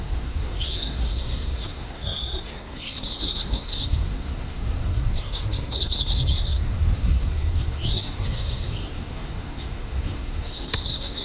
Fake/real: fake